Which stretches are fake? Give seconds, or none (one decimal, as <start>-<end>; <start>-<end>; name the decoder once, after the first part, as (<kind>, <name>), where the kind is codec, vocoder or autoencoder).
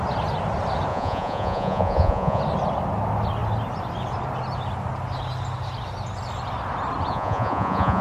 0.9-2.4 (vocoder, Vocos); 7.1-8.0